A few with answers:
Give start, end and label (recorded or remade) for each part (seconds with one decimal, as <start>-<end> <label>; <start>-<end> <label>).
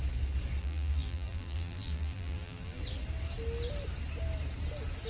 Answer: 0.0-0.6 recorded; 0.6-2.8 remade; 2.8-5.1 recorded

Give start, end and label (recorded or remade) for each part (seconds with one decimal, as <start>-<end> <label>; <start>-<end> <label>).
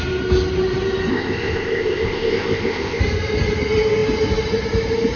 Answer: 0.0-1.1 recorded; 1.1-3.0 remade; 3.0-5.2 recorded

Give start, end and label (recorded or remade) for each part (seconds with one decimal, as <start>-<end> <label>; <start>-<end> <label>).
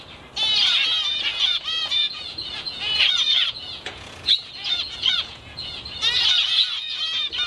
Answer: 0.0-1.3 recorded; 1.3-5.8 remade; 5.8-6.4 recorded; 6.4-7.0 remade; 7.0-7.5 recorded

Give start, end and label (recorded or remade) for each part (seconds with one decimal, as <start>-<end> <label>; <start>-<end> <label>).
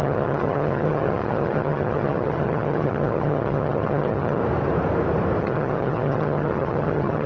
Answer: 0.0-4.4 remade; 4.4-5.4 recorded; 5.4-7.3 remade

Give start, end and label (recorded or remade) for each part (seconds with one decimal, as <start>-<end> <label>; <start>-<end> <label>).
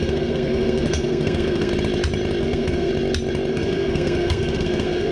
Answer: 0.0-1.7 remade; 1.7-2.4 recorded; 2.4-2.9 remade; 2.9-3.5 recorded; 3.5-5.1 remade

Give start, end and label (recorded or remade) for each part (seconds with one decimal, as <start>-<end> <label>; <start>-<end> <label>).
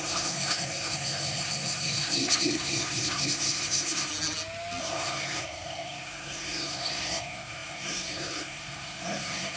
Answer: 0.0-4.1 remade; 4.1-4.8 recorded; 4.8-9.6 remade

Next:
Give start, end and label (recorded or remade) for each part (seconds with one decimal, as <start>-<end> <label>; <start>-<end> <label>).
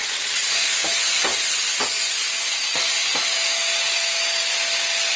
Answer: 0.0-0.5 remade; 0.5-5.2 recorded